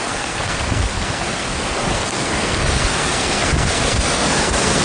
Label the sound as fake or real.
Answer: fake